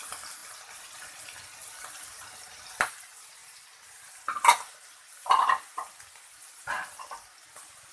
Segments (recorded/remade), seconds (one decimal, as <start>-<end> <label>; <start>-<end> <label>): 0.0-7.9 recorded